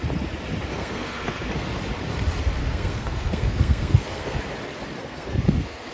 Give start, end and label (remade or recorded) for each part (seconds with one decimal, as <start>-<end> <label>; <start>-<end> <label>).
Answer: 0.0-0.7 recorded; 0.7-1.8 remade; 1.8-2.6 recorded; 2.6-4.4 remade; 4.4-5.0 recorded; 5.0-5.9 remade